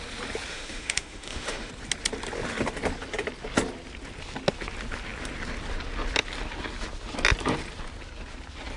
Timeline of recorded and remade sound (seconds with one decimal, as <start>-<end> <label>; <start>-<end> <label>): 0.0-0.5 recorded; 0.5-1.7 remade; 1.7-8.8 recorded